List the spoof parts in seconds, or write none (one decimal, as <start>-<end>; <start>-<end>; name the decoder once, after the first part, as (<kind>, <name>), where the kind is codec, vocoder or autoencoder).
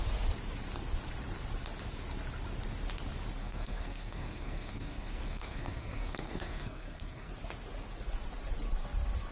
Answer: 3.4-7.3 (codec, SNAC)